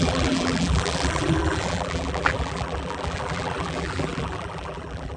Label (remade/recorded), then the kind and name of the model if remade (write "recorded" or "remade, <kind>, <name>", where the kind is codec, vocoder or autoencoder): remade, vocoder, BigVGAN v2